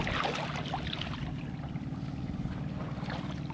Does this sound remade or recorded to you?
recorded